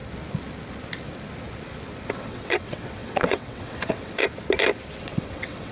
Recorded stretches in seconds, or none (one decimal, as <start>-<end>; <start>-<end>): 0.0-2.1; 4.2-5.0